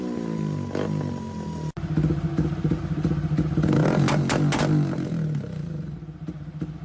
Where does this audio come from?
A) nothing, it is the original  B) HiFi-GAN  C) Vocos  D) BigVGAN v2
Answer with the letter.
A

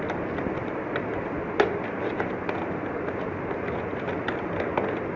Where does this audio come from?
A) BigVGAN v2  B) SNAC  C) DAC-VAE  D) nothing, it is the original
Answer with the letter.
D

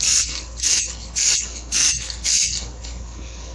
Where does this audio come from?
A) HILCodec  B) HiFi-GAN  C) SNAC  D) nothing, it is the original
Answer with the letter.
C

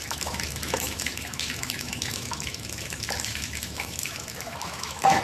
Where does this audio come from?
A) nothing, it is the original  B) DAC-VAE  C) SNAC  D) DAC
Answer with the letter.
B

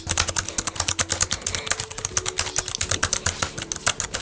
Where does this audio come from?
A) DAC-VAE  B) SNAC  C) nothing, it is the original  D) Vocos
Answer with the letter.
C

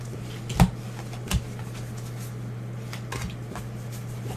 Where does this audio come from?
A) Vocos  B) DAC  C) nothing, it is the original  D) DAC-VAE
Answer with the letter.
C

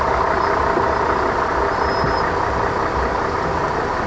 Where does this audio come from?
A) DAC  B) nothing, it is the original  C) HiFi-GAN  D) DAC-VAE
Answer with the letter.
B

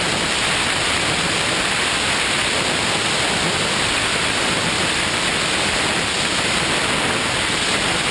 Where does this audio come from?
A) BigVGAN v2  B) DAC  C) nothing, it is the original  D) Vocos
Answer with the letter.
C